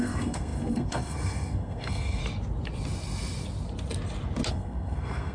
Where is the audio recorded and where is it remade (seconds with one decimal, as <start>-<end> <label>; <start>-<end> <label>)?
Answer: 0.0-2.2 remade; 2.2-4.5 recorded; 4.5-5.3 remade